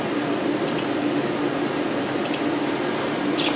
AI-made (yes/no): no